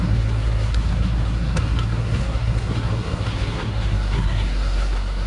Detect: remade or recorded remade